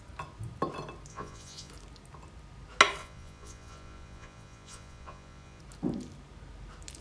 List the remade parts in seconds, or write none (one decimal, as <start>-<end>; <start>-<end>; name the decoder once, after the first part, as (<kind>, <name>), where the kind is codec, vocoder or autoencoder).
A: 1.1-1.7 (vocoder, Vocos); 3.0-5.6